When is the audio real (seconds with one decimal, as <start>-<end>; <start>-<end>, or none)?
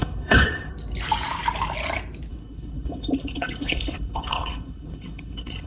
0.7-2.3